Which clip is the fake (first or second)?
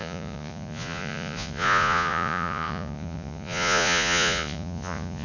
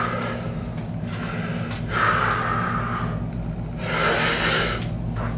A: first